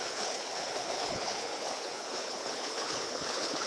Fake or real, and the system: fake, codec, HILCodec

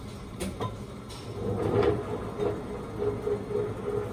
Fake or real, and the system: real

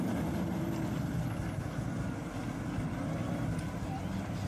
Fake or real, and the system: real